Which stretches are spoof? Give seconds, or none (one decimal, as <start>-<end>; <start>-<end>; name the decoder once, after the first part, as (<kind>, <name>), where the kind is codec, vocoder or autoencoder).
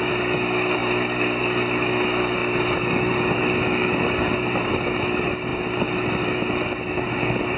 0.0-7.6 (codec, DAC)